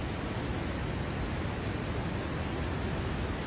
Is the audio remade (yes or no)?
no